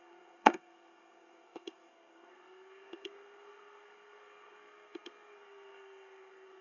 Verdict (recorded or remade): remade